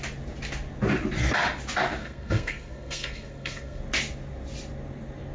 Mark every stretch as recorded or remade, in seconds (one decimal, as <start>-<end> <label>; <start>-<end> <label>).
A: 0.0-2.0 recorded; 2.0-3.8 remade; 3.8-5.3 recorded